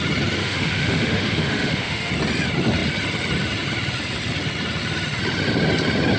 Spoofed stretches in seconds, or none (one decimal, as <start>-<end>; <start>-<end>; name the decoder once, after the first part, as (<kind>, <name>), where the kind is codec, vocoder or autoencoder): 0.4-2.1 (autoencoder, DAC-VAE)